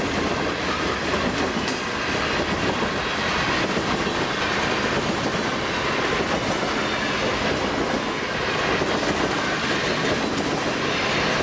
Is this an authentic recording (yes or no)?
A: yes